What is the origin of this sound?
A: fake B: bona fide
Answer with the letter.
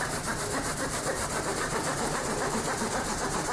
A